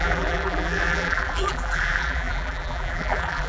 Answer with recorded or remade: remade